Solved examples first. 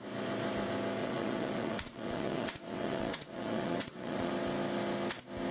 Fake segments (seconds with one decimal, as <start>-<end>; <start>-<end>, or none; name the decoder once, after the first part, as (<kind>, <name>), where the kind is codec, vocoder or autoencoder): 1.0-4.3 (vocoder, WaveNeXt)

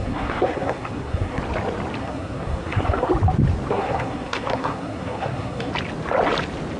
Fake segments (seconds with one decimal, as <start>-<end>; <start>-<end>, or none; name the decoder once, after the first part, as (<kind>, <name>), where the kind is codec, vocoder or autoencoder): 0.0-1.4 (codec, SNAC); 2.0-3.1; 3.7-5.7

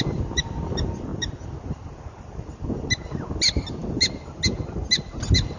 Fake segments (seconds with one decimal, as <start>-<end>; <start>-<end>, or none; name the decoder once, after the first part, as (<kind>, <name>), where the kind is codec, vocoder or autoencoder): none